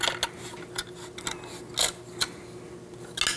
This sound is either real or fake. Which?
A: real